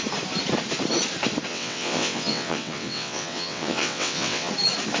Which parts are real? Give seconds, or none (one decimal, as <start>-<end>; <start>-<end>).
0.0-1.5; 4.5-5.0

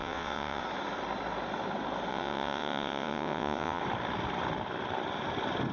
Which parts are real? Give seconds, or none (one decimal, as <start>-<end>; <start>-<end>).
0.6-2.1; 3.8-5.7

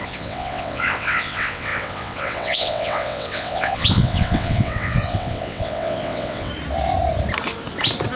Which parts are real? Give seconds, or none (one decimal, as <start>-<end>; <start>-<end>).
6.5-8.2

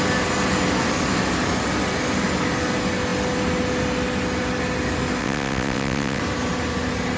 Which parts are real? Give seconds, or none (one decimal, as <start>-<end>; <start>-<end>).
0.0-5.2; 6.2-7.2